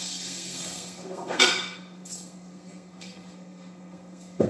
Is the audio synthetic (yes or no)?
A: yes